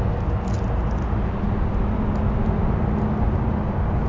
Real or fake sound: real